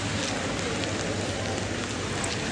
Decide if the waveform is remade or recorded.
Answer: recorded